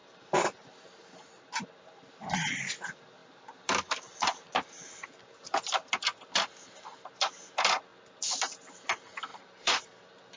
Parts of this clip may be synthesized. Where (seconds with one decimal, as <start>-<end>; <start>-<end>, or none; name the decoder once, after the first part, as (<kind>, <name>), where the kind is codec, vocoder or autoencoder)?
0.0-0.7 (vocoder, BigVGAN v2); 9.3-10.4